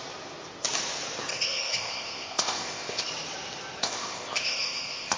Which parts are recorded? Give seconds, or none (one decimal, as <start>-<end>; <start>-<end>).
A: 0.0-1.3; 3.1-3.8